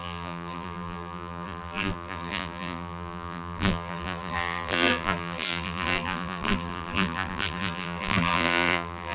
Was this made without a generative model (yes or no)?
no